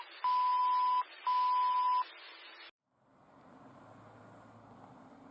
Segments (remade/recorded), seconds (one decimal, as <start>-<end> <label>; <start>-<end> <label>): 0.0-5.3 recorded